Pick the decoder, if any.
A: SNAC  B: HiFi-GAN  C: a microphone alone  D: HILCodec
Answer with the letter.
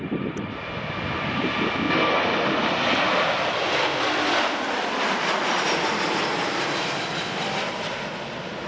C